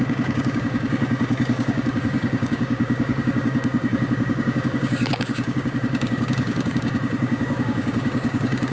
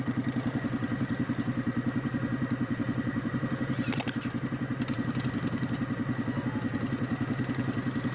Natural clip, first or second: second